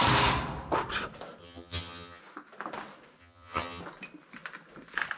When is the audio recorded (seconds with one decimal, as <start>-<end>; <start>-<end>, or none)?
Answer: 0.0-1.4; 2.2-3.2; 3.8-5.2